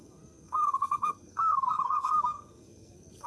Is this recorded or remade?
remade